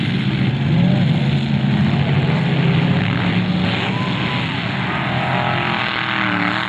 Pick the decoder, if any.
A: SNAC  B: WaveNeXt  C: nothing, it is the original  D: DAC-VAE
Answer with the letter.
C